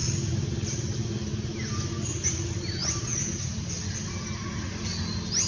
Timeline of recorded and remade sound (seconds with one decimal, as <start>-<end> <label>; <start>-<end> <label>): 0.0-5.5 recorded